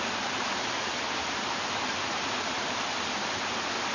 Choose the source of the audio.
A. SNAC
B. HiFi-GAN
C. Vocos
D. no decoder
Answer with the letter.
D